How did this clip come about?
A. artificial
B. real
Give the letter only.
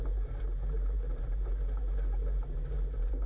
B